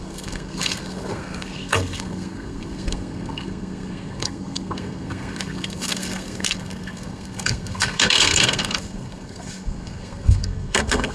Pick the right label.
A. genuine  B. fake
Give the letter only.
B